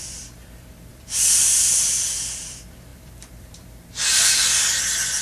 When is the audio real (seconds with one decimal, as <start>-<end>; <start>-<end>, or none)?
none